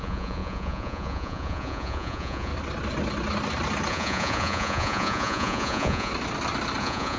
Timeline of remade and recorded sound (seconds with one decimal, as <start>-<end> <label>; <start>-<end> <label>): 0.0-2.5 remade; 2.5-3.9 recorded; 3.9-6.1 remade; 6.1-6.8 recorded; 6.8-7.2 remade